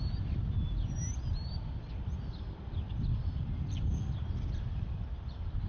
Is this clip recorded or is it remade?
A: remade